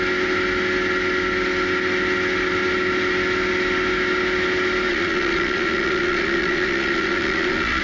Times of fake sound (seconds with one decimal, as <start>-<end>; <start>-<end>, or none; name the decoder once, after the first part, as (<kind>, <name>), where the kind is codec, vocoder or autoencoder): 4.9-7.8 (vocoder, Vocos)